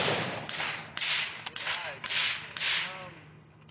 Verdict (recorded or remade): recorded